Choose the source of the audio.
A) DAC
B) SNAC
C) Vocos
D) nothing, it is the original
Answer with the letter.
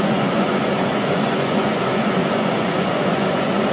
C